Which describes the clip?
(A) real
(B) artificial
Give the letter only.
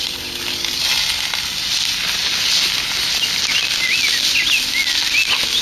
A